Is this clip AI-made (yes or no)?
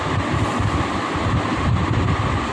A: no